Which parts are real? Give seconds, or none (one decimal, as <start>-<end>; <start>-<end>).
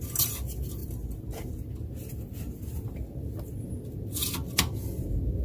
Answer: 0.0-5.4